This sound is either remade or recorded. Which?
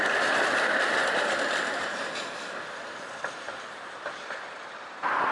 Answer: remade